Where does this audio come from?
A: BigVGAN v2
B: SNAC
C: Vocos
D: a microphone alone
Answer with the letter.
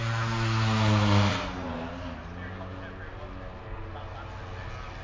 D